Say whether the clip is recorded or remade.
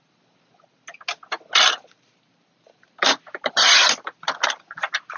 recorded